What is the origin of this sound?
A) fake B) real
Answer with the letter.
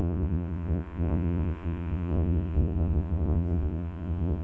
A